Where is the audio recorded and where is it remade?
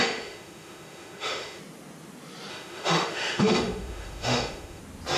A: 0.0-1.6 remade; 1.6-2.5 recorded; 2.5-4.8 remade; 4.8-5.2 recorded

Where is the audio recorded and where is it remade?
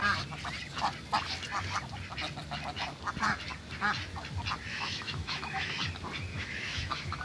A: 0.0-4.7 recorded; 4.7-5.8 remade; 5.8-6.3 recorded; 6.3-7.2 remade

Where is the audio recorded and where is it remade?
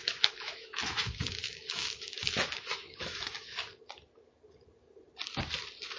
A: 0.0-3.6 remade; 3.6-6.0 recorded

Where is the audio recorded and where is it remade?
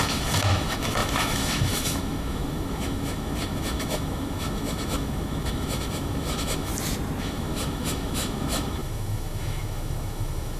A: 0.0-6.7 remade; 6.7-7.2 recorded; 7.2-10.6 remade